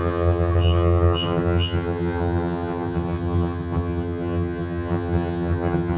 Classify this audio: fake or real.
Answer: fake